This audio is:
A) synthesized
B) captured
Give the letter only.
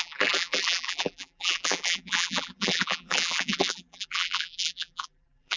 A